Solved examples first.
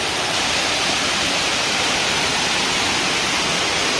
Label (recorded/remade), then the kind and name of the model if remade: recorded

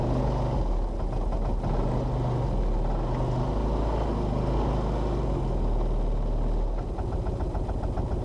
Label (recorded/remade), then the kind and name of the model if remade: recorded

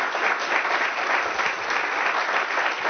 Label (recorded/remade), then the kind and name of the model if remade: recorded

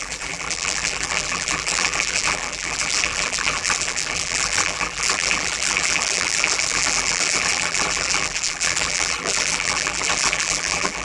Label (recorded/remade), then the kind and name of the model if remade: remade, vocoder, BigVGAN v2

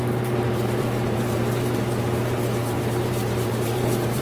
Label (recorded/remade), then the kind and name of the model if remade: remade, vocoder, BigVGAN v2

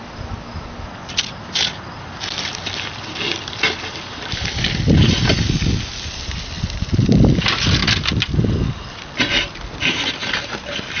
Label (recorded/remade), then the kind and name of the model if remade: remade, vocoder, BigVGAN v2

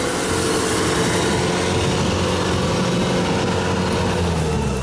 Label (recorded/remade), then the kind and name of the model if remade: recorded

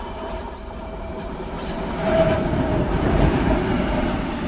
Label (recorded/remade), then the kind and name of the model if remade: remade, vocoder, BigVGAN v2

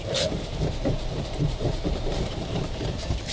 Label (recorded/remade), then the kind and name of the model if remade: remade, vocoder, BigVGAN v2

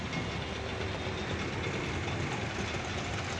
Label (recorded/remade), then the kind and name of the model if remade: recorded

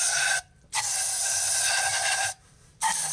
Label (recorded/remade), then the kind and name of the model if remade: remade, vocoder, BigVGAN v2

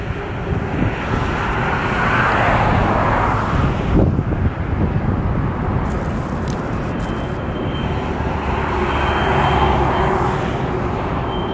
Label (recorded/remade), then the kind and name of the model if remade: recorded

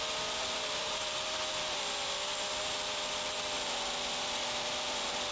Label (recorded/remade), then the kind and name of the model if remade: remade, vocoder, BigVGAN v2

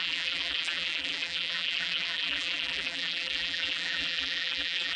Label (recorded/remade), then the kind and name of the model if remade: remade, vocoder, BigVGAN v2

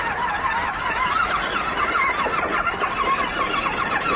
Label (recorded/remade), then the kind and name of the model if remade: remade, vocoder, BigVGAN v2